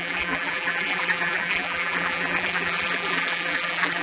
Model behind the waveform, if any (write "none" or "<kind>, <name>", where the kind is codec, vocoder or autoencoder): vocoder, BigVGAN v2